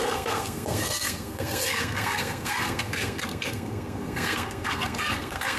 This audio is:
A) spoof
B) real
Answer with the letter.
A